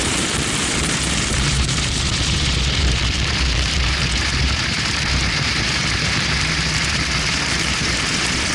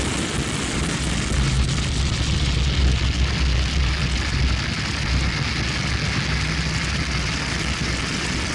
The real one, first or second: second